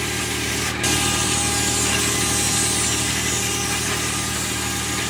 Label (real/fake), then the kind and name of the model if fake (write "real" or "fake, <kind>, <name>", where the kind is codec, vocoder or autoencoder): real